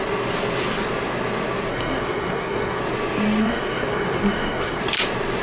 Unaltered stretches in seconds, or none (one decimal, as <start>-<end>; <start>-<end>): 0.0-1.7; 2.8-3.4; 4.8-5.4

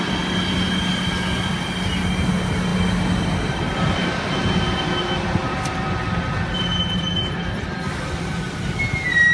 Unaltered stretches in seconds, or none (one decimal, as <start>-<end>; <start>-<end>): 0.0-2.7; 3.9-5.4; 7.7-9.3